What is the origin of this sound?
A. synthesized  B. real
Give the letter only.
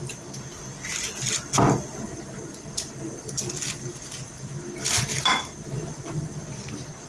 B